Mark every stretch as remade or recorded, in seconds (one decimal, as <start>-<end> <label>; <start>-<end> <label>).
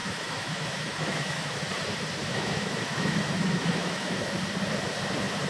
0.0-1.7 remade; 1.7-2.3 recorded; 2.3-4.4 remade; 4.4-5.5 recorded